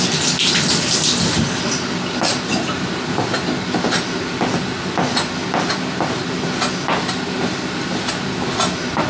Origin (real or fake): real